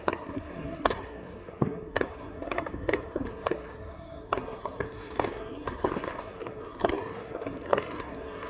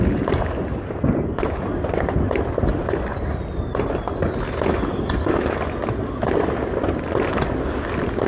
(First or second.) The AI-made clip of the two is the first